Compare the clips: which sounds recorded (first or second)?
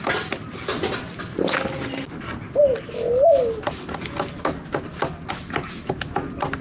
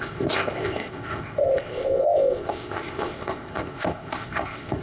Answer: first